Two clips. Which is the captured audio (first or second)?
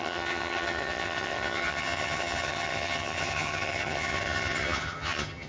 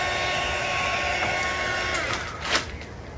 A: second